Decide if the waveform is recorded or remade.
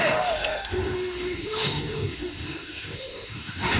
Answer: remade